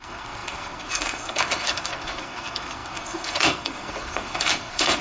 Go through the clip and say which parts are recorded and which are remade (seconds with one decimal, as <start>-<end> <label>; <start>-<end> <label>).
0.0-5.0 remade